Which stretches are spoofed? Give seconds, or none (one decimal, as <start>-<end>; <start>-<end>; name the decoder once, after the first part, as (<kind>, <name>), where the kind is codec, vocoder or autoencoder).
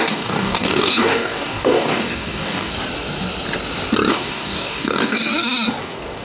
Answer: 0.0-2.7 (codec, DAC); 4.1-5.3; 5.8-6.2